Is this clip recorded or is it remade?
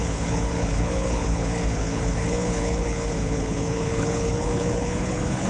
remade